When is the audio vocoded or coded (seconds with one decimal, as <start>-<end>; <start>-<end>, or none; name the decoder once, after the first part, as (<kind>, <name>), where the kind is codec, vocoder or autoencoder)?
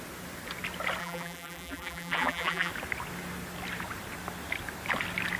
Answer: 1.0-2.7 (vocoder, BigVGAN v2)